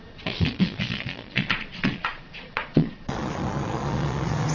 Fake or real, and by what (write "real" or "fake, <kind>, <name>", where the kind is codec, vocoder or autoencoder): fake, vocoder, Vocos